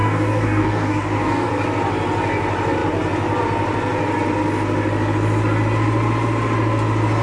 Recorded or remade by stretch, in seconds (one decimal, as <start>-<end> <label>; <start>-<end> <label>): 0.0-1.5 remade; 1.5-7.2 recorded